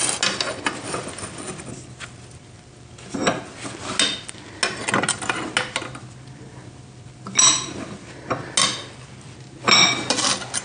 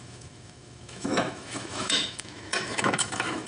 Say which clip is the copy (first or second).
second